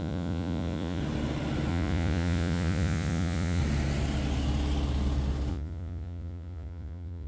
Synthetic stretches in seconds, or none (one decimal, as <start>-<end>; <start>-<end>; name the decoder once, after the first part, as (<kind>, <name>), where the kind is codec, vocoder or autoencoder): 0.0-1.0 (vocoder, Vocos); 1.7-3.6; 5.5-7.3